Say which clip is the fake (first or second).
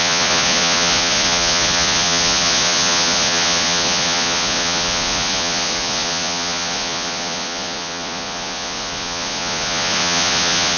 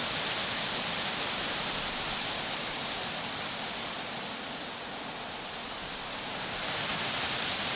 first